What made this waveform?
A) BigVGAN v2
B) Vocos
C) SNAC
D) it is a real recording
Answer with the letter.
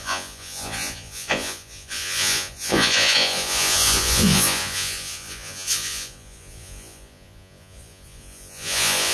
B